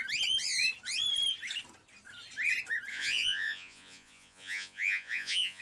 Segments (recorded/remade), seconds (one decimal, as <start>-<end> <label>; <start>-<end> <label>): 0.0-2.9 recorded; 2.9-5.6 remade